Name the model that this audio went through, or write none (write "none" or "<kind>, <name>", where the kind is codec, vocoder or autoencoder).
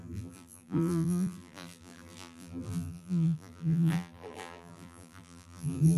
vocoder, BigVGAN v2